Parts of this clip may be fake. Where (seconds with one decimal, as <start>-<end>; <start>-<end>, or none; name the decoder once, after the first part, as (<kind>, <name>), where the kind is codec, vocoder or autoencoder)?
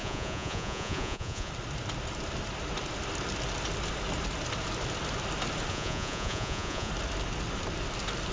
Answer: 0.0-1.5 (vocoder, Vocos); 5.7-6.9